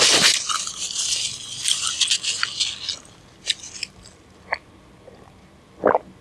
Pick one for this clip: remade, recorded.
recorded